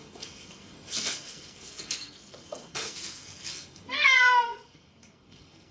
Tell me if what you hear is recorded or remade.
remade